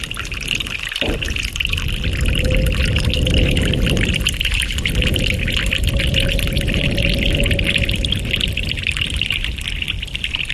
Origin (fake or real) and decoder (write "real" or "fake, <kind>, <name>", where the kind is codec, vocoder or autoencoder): real